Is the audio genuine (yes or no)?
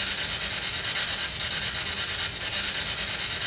yes